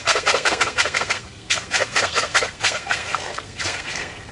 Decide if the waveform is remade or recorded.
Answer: remade